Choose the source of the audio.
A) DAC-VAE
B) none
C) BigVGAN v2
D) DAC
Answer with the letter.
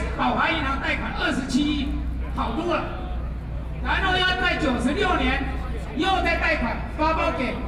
B